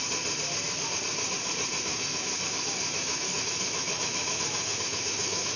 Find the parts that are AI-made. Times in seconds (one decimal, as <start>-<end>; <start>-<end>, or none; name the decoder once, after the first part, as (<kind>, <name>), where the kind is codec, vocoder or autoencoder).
1.9-5.6 (autoencoder, DAC-VAE)